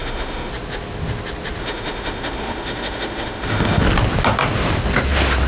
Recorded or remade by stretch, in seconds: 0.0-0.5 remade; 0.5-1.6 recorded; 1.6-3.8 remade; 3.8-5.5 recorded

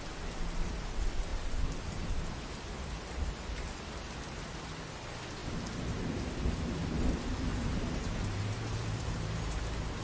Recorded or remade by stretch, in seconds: 0.0-7.5 recorded; 7.5-9.6 remade; 9.6-10.0 recorded

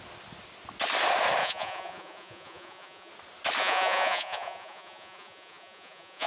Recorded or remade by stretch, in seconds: 0.0-1.4 recorded; 1.4-3.1 remade; 3.1-3.6 recorded; 3.6-6.3 remade